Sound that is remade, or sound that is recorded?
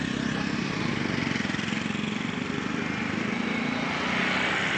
recorded